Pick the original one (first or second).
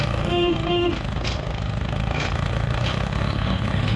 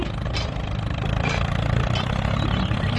second